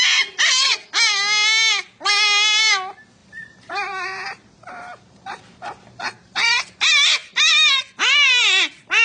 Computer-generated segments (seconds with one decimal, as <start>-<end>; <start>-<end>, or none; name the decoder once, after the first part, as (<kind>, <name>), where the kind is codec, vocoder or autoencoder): 3.2-6.6 (vocoder, BigVGAN v2)